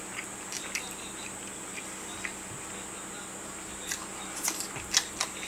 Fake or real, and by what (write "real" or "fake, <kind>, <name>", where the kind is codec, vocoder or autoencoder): real